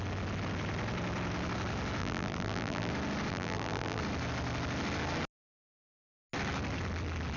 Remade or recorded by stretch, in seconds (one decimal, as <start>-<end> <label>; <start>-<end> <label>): 0.0-2.0 recorded; 2.0-2.9 remade; 2.9-3.3 recorded; 3.3-4.0 remade; 4.0-7.4 recorded